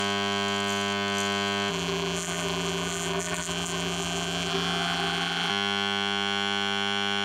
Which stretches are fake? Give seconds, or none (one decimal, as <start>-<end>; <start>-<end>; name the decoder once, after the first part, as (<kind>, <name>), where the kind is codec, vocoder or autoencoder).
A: 1.7-5.5 (vocoder, BigVGAN v2)